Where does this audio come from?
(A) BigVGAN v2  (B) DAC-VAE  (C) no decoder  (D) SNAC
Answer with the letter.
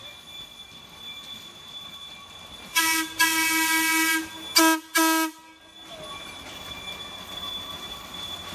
C